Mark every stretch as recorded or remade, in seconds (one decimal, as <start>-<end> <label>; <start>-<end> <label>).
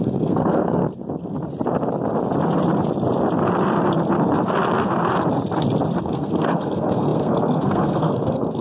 0.0-0.8 remade; 0.8-6.0 recorded; 6.0-8.6 remade